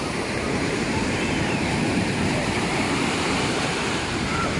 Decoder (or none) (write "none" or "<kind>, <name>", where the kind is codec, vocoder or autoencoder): vocoder, BigVGAN v2